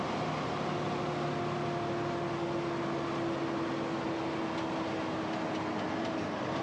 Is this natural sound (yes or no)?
yes